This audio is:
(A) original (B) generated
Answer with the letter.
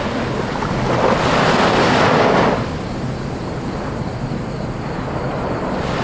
A